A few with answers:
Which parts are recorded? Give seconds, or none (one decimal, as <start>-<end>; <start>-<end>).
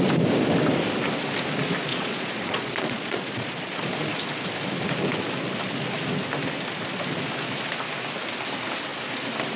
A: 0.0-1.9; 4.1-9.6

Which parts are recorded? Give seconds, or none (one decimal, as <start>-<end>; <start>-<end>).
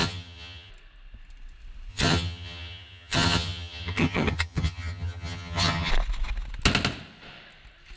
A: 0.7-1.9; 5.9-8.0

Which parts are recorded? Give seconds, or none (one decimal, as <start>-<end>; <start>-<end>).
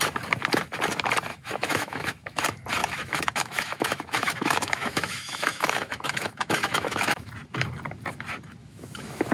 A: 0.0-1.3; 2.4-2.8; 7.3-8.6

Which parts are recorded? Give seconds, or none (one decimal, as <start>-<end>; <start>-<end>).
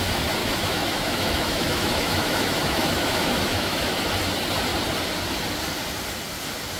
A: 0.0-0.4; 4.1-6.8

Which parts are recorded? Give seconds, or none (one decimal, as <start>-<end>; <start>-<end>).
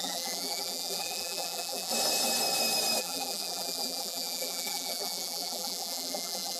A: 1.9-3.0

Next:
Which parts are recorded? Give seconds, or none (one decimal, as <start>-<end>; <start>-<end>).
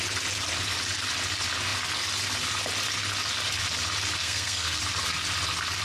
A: 0.0-4.2; 4.8-5.8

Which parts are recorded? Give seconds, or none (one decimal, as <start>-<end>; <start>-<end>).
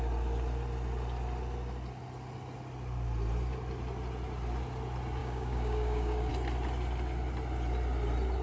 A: 0.0-5.2; 6.3-8.4